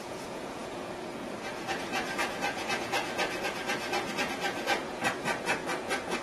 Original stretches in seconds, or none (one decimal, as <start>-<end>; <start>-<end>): none